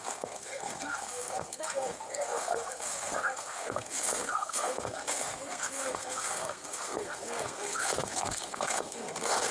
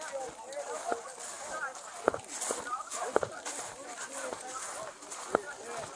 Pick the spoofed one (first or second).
first